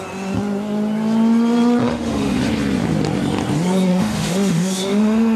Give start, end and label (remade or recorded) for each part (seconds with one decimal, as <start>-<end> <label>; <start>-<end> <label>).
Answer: 0.0-1.8 recorded; 1.8-2.4 remade; 2.4-3.9 recorded; 3.9-5.4 remade